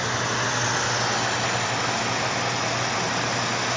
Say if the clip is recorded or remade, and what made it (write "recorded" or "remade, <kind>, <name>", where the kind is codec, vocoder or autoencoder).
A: recorded